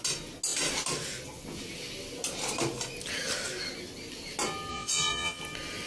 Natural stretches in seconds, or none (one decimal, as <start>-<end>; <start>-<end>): 0.0-4.7; 5.4-5.9

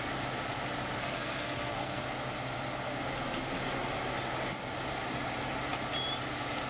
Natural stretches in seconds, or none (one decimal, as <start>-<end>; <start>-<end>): 0.0-1.0; 2.0-6.7

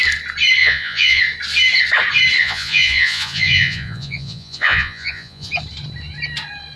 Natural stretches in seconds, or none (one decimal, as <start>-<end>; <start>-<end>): 0.0-0.6; 1.2-2.4; 5.5-6.8